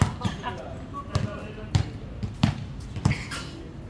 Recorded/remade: recorded